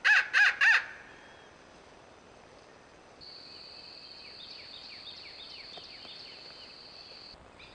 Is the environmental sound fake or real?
real